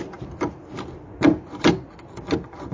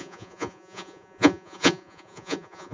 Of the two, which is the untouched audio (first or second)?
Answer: first